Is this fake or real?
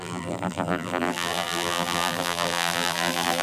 fake